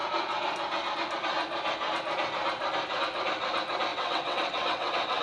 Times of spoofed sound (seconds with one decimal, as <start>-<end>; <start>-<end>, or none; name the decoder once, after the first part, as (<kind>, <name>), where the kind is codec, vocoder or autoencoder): 3.9-5.2 (vocoder, WaveNeXt)